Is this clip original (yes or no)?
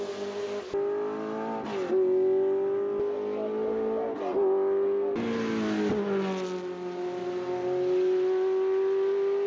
yes